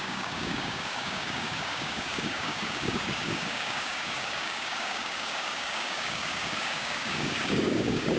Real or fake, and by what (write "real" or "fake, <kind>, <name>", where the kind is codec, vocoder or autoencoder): fake, codec, DAC